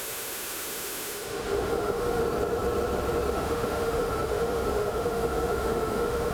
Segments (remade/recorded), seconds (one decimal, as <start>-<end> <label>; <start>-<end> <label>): 0.0-2.2 remade; 2.2-3.3 recorded; 3.3-6.3 remade